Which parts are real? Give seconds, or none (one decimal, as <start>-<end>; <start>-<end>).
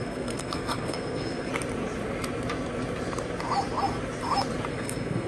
1.5-4.7